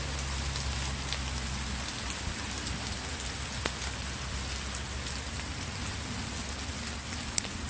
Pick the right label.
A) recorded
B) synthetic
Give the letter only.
A